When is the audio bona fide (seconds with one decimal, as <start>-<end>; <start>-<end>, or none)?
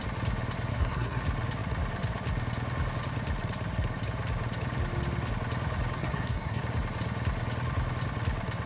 0.0-0.7; 1.2-6.0; 6.6-8.7